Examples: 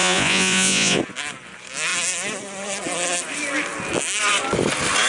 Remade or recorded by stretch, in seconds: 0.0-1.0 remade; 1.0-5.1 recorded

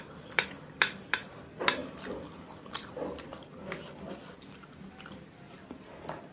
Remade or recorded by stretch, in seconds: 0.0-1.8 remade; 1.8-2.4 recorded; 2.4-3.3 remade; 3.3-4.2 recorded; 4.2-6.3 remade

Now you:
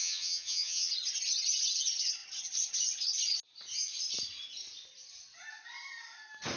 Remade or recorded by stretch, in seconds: 0.0-0.9 remade; 0.9-6.6 recorded

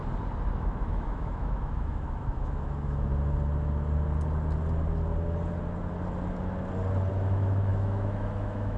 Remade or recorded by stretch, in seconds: 0.0-0.6 recorded; 0.6-3.1 remade; 3.1-7.1 recorded; 7.1-8.8 remade